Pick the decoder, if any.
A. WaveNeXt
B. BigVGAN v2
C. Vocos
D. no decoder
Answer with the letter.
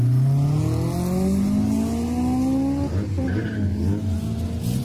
D